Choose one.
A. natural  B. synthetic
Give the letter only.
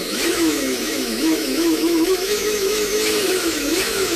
B